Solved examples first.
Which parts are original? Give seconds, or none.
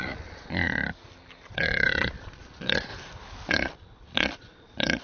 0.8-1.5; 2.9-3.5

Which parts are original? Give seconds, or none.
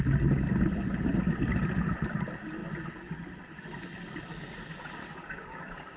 0.0-5.0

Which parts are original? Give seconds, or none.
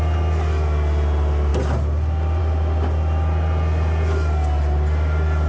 0.0-5.5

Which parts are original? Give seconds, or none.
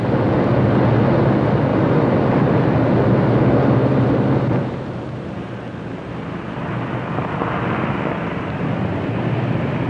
0.0-1.7; 2.7-9.9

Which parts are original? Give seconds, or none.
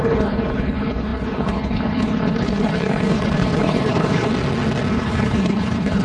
4.3-4.9